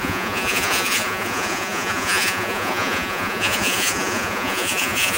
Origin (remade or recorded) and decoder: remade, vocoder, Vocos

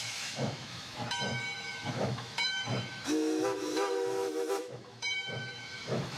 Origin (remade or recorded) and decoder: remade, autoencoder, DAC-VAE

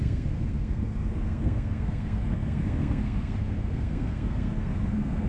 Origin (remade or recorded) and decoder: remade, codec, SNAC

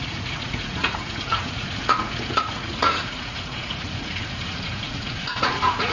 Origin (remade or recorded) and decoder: remade, vocoder, Vocos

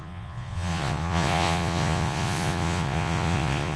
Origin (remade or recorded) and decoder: remade, vocoder, Vocos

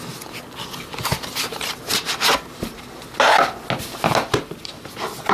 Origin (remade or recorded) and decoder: recorded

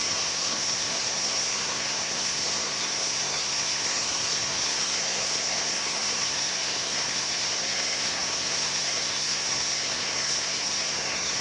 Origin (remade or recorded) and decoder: remade, codec, SNAC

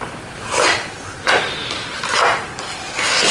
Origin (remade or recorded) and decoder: recorded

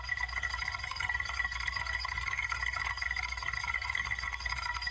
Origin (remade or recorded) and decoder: remade, codec, SNAC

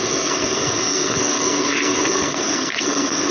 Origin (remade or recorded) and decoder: remade, codec, SNAC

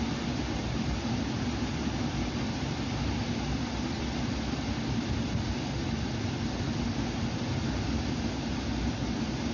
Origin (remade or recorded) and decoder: recorded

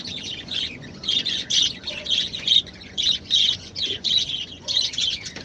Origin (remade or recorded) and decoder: remade, vocoder, Vocos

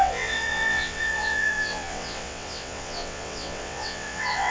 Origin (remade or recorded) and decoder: remade, vocoder, WaveNeXt